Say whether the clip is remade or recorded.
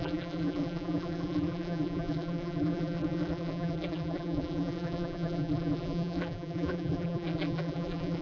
remade